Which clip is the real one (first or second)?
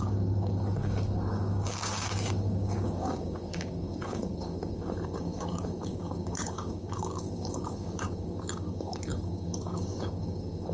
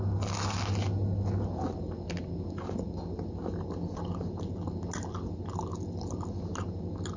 second